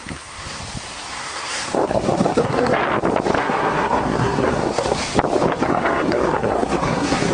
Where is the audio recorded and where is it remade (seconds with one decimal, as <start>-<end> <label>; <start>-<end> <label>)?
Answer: 0.0-0.6 remade; 0.6-1.1 recorded; 1.1-2.8 remade; 2.8-3.4 recorded; 3.4-5.0 remade; 5.0-5.5 recorded; 5.5-7.3 remade

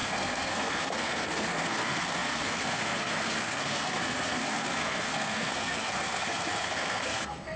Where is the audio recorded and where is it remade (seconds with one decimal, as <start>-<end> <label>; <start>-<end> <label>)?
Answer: 0.0-7.6 remade